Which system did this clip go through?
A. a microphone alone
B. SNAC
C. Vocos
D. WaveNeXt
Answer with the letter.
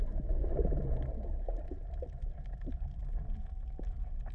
A